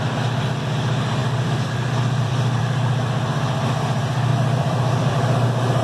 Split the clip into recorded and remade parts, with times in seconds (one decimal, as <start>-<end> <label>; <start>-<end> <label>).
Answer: 0.0-1.2 recorded; 1.2-2.6 remade; 2.6-4.3 recorded; 4.3-5.1 remade; 5.1-5.8 recorded